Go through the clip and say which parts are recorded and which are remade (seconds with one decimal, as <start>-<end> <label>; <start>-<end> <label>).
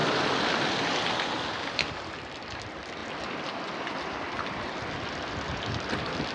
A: 0.0-6.3 recorded